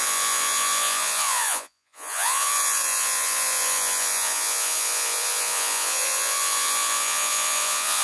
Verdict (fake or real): fake